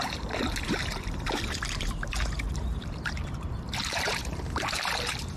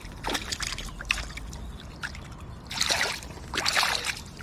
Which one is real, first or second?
second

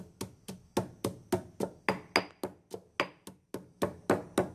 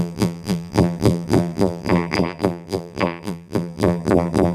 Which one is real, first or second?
first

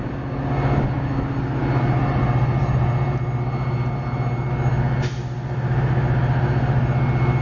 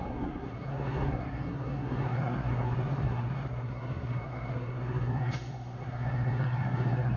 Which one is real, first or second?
first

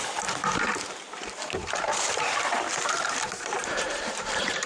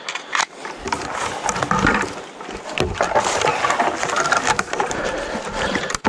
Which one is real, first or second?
second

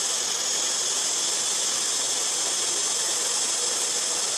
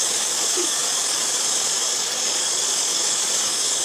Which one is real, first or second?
first